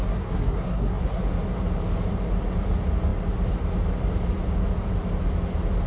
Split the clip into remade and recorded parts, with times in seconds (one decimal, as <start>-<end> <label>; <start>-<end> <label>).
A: 0.0-1.2 remade; 1.2-5.9 recorded